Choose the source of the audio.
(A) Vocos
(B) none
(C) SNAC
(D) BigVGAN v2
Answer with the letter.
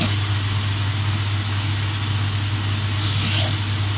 B